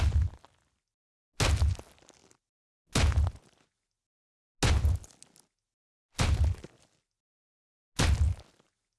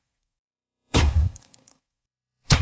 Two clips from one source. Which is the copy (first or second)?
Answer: second